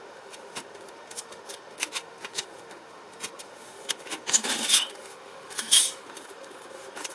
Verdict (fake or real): fake